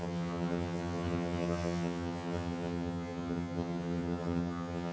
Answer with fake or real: fake